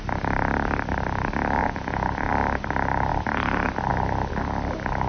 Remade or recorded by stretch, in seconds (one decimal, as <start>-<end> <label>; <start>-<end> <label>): 0.0-1.6 recorded; 1.6-2.3 remade; 2.3-5.1 recorded